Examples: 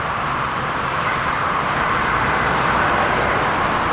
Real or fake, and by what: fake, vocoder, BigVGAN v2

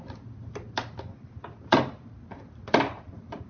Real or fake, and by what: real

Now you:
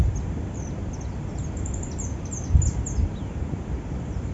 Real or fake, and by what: real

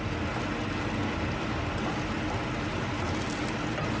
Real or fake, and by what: real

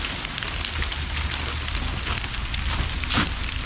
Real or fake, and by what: real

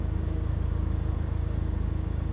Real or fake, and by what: fake, codec, DAC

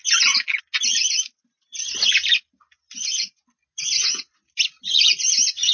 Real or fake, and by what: real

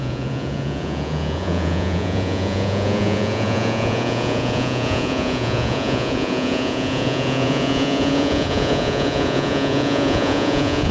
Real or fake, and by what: fake, vocoder, Vocos